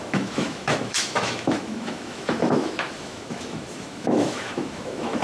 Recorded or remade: remade